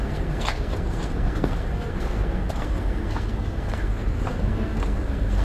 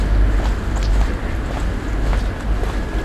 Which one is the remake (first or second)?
first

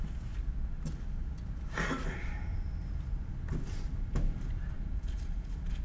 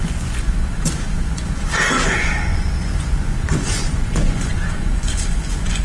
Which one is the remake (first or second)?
second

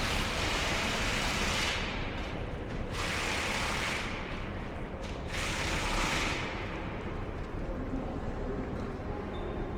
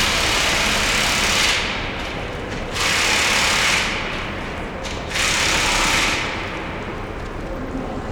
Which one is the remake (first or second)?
first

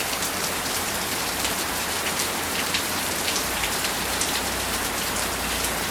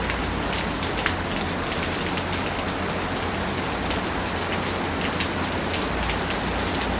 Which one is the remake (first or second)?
first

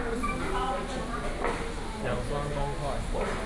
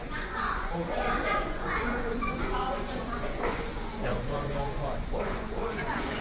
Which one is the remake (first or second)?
second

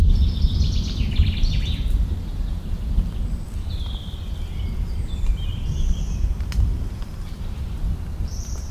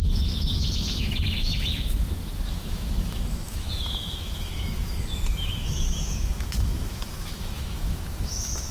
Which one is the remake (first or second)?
second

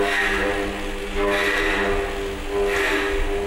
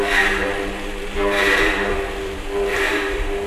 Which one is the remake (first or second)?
second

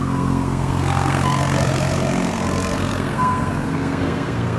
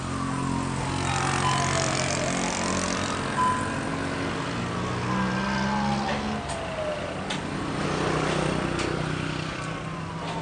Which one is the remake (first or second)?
first